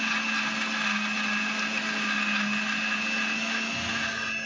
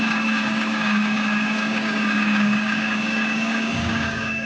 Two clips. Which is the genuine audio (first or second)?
first